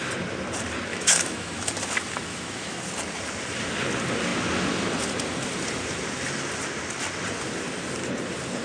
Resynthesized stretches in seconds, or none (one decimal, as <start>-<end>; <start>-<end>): 0.9-1.7; 2.3-2.9